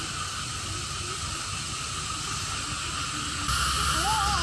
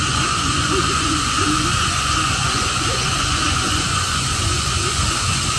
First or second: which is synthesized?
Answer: second